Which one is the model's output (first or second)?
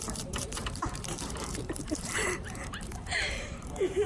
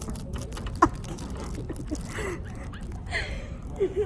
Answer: first